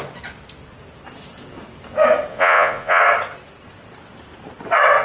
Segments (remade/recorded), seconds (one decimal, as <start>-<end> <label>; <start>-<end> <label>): 0.0-2.3 recorded; 2.3-3.0 remade; 3.0-5.0 recorded